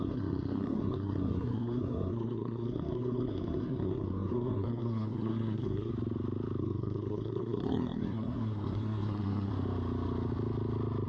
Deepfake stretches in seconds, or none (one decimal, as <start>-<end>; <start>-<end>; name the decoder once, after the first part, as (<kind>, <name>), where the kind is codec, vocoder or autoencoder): 0.0-5.9 (codec, SNAC); 6.6-9.5